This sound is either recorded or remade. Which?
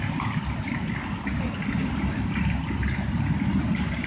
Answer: recorded